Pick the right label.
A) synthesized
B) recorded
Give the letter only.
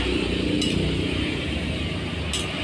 B